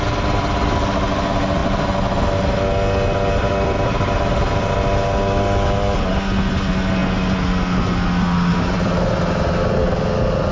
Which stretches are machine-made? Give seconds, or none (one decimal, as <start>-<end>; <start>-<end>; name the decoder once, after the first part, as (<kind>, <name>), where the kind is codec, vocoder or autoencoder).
none